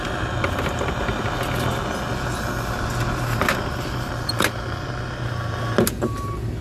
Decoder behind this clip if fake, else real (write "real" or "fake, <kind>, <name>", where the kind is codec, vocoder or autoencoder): real